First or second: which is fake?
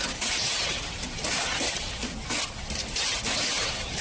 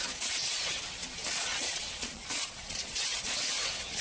second